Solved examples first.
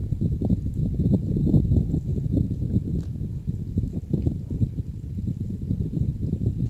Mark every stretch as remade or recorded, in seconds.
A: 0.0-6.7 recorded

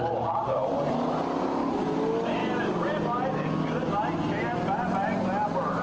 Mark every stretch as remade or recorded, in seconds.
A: 0.0-5.8 recorded

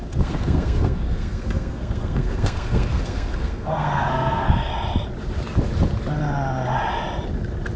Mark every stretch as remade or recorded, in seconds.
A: 0.0-4.7 remade; 4.7-7.8 recorded